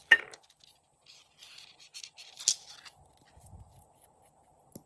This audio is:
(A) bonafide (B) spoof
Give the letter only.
A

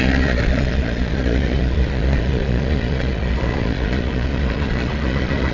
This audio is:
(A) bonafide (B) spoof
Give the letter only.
B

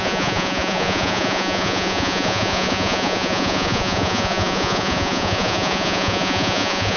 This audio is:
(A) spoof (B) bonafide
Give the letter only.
A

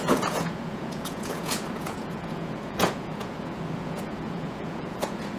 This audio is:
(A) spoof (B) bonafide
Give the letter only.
A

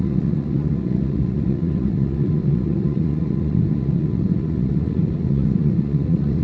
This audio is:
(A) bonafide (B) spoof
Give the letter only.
B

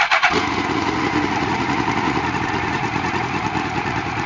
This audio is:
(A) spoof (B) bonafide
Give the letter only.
A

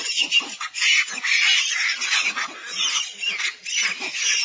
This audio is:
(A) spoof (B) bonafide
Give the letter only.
B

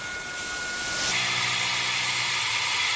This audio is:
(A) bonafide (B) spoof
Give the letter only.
A